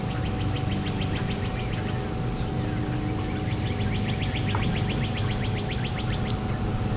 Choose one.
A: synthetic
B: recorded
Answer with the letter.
B